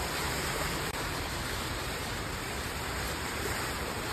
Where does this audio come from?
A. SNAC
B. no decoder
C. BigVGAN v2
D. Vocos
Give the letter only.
C